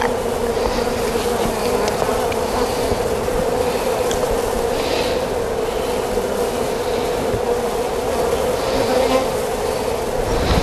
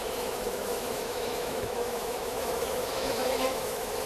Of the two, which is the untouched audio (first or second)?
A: first